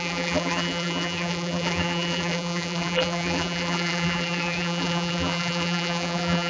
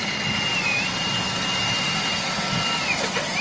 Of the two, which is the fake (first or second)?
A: first